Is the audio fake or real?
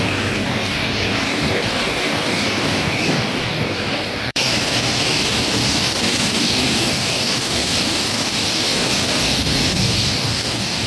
fake